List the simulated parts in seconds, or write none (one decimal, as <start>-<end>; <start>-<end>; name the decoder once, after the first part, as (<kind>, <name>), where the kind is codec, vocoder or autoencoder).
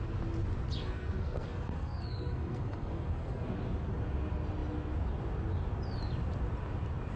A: 0.8-3.5 (codec, SNAC)